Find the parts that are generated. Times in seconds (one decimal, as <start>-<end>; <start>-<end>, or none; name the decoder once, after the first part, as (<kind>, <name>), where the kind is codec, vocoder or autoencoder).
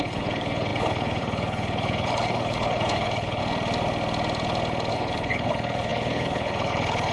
0.0-3.4 (codec, HILCodec); 4.9-7.1